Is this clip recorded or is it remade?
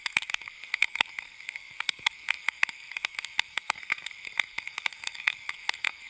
remade